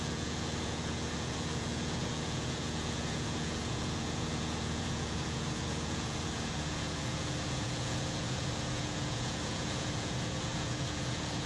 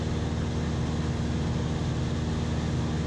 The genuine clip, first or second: second